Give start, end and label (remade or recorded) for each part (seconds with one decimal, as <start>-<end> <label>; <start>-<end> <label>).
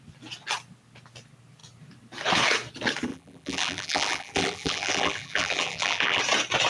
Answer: 0.0-3.1 recorded; 3.1-6.2 remade; 6.2-6.7 recorded